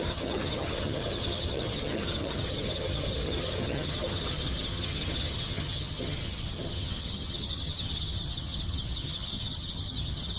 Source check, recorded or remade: remade